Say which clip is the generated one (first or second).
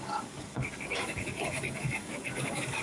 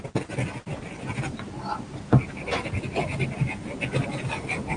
first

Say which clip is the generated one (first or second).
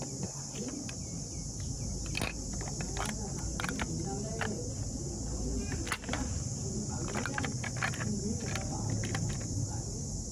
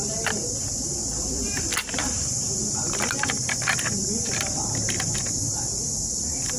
second